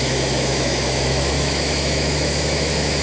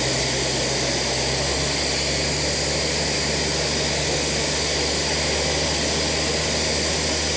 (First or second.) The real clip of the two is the second